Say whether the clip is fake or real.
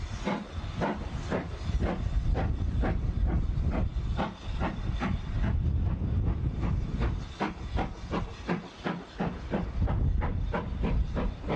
real